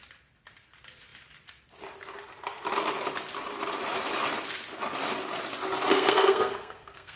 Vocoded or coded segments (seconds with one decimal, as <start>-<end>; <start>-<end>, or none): 5.9-7.2